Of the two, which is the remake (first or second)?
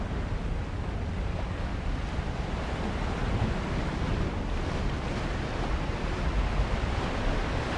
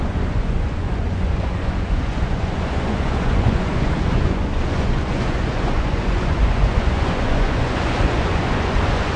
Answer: second